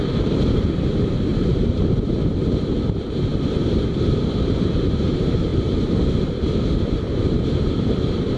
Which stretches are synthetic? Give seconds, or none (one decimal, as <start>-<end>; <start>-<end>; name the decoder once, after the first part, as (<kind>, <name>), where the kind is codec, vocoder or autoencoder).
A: 0.0-8.4 (vocoder, BigVGAN v2)